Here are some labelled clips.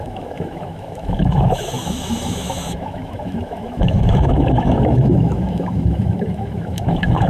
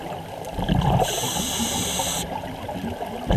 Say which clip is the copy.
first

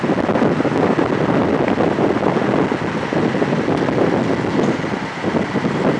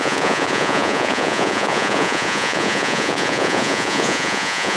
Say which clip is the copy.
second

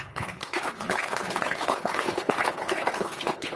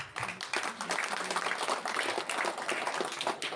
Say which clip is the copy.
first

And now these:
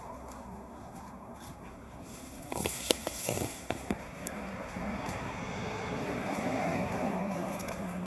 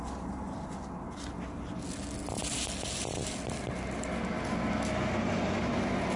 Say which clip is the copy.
first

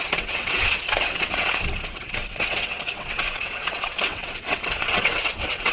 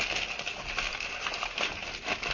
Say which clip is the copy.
first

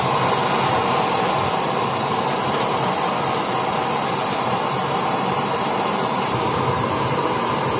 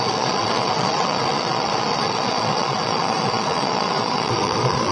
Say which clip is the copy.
second